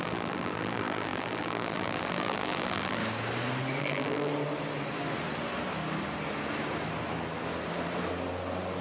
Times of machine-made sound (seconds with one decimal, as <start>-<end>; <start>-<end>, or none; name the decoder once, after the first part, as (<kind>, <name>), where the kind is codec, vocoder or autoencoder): 0.0-3.0 (vocoder, BigVGAN v2); 3.8-4.3